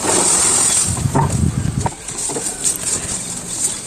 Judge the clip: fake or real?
real